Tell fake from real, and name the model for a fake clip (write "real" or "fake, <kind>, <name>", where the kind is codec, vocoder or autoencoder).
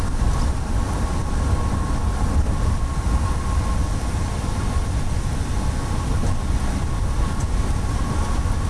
real